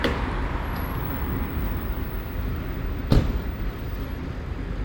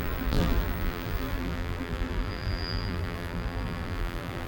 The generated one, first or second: second